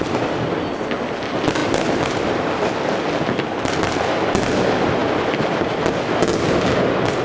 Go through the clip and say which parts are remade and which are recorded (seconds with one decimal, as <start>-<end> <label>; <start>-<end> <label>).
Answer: 0.0-7.2 recorded